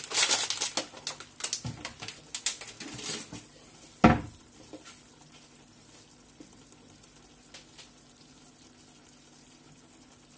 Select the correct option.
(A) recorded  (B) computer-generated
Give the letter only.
A